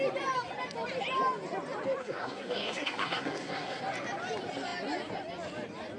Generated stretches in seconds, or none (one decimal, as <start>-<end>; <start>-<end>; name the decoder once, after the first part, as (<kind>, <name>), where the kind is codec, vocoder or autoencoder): 2.0-3.8 (codec, SNAC)